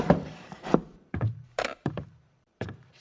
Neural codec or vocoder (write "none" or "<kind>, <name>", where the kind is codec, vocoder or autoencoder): vocoder, BigVGAN v2